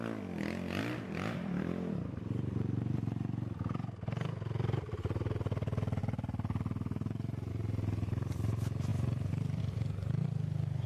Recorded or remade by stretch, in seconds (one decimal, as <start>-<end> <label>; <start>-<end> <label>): 0.0-8.9 recorded; 8.9-9.6 remade; 9.6-10.9 recorded